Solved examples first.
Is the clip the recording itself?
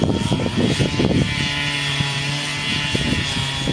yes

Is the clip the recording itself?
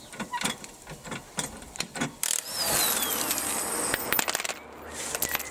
yes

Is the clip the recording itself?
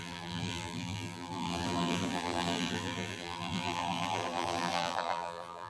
no